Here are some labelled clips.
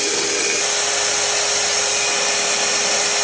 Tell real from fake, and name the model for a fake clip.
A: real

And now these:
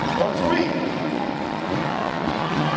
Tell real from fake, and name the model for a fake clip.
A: fake, vocoder, Vocos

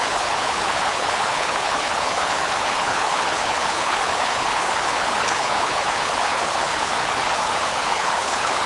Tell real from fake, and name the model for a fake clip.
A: fake, codec, HILCodec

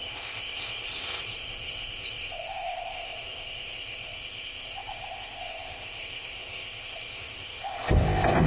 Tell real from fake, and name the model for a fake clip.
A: fake, codec, ZipCodec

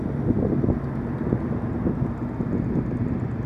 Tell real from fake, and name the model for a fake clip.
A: real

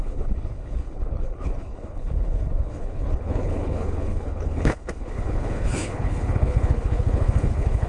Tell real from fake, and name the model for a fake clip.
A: fake, codec, HILCodec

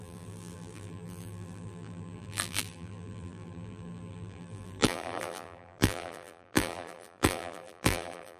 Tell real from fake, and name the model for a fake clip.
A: fake, vocoder, BigVGAN v2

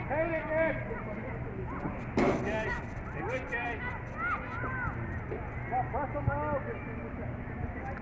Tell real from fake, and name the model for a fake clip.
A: real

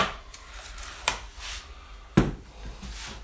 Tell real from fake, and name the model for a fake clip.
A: real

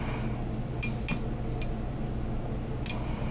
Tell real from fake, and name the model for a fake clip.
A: real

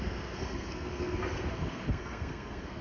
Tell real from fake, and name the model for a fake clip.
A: fake, codec, SNAC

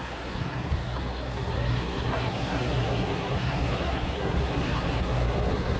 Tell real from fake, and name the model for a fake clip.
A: fake, codec, SNAC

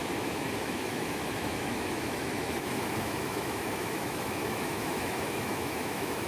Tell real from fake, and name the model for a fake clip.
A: fake, autoencoder, DAC-VAE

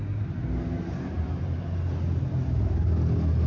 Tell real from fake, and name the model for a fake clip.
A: real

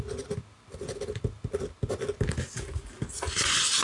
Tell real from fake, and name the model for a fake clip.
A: real